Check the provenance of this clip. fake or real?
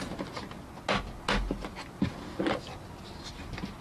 real